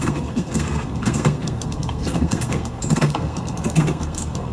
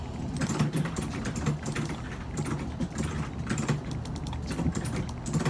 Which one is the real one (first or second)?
second